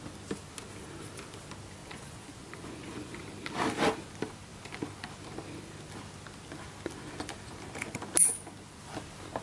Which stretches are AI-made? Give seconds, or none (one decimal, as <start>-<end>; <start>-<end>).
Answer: 1.8-3.2